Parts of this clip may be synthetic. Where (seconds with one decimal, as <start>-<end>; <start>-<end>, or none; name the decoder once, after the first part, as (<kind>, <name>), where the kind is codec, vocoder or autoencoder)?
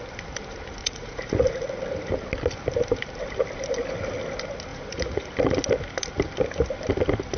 0.8-1.7 (vocoder, Vocos); 4.7-5.3